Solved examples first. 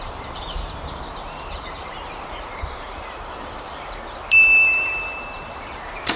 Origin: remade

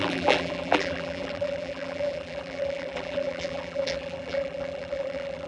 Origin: remade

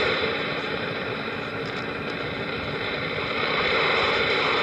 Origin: remade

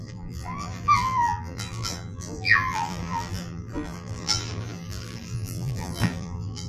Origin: remade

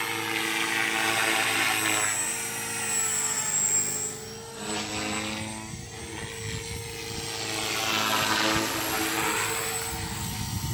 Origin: recorded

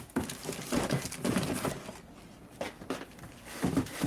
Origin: recorded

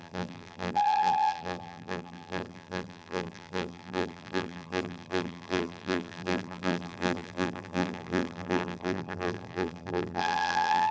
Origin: remade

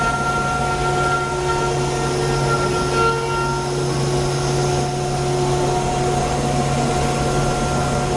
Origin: recorded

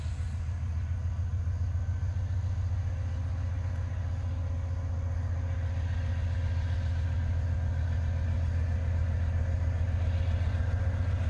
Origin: recorded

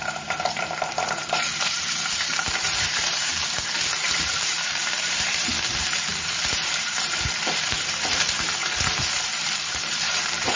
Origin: remade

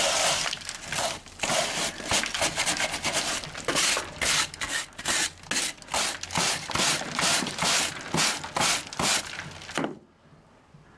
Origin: recorded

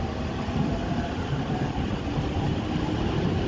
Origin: remade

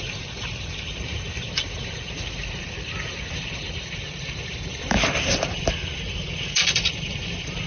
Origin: remade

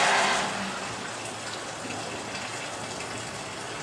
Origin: recorded